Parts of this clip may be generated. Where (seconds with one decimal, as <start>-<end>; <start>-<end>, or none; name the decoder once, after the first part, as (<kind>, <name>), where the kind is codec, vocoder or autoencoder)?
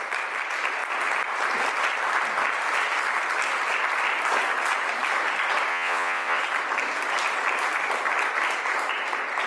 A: 5.7-6.4 (vocoder, WaveNeXt)